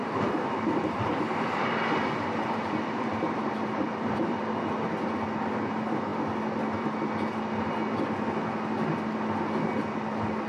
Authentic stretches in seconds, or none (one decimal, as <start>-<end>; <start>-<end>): 4.4-10.5

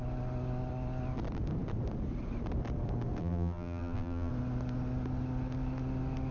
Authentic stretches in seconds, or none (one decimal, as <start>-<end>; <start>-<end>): 0.0-3.2; 4.3-6.3

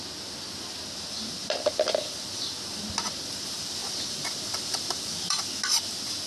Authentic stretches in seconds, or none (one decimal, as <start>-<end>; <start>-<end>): 0.0-1.4; 2.8-3.8; 5.4-6.3

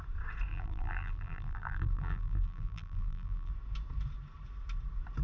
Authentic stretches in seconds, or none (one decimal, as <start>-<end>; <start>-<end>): 0.0-0.5; 3.5-5.2

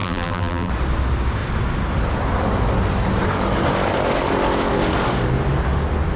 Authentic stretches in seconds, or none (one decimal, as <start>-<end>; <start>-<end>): 0.7-6.2

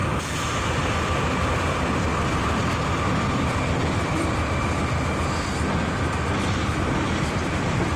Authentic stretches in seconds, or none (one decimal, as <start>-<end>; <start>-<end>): 0.0-0.6; 2.1-6.4

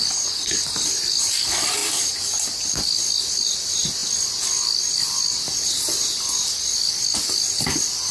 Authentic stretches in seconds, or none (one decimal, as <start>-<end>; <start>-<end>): 0.0-1.8; 2.7-8.1

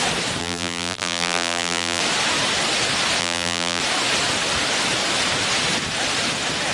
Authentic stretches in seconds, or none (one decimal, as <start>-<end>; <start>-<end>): 0.0-0.4; 2.0-3.2; 3.8-6.7